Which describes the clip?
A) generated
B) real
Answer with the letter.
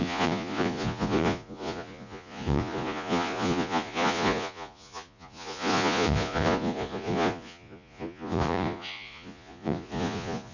A